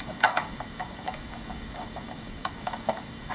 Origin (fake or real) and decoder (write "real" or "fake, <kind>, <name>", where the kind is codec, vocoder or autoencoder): fake, codec, DAC